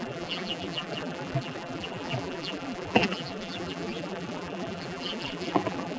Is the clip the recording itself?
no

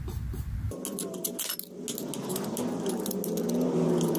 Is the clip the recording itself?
yes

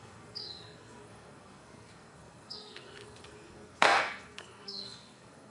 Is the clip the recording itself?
no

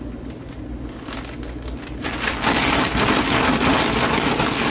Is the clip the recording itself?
yes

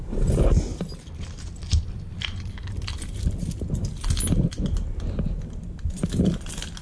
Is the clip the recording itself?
yes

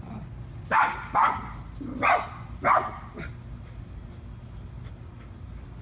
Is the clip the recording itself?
yes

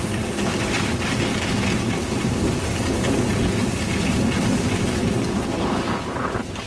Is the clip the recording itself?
yes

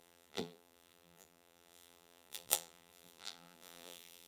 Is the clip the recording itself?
no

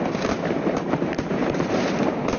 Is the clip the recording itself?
no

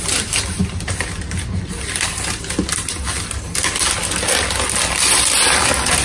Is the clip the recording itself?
yes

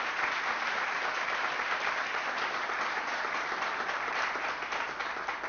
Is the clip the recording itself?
yes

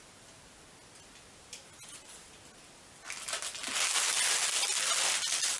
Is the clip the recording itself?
yes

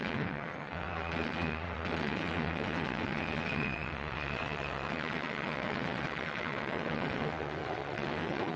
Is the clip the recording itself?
no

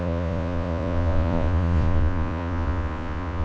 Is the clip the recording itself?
no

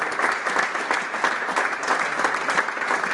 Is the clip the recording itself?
yes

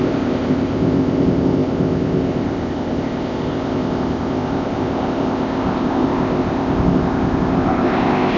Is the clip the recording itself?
no